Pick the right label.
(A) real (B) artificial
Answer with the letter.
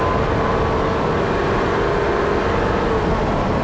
A